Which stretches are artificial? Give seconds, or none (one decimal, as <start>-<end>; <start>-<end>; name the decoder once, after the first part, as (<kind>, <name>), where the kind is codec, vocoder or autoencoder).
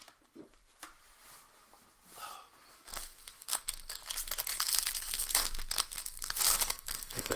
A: 2.7-4.0 (codec, SNAC); 4.6-7.4